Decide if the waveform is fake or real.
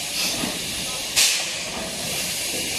fake